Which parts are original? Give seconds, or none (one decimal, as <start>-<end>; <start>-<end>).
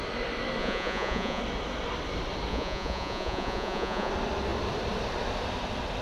0.0-0.6; 1.4-2.5; 4.1-6.0